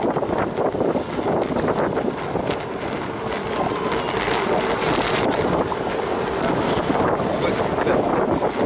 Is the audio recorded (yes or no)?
yes